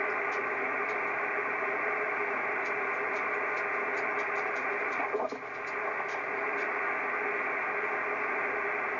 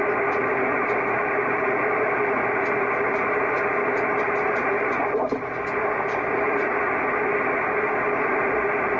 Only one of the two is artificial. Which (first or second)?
second